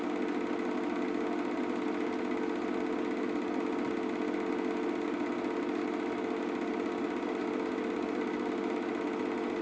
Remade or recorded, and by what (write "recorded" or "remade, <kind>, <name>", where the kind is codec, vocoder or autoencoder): recorded